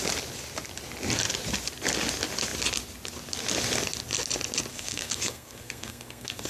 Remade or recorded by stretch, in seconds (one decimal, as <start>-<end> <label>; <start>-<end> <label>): 0.0-4.7 recorded; 4.7-6.5 remade